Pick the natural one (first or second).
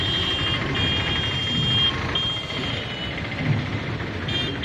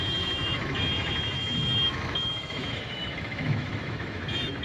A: first